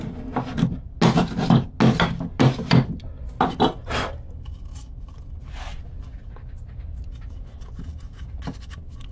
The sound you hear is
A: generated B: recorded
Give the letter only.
B